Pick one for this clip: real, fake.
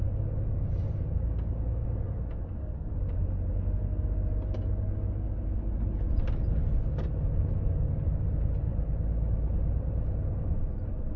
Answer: real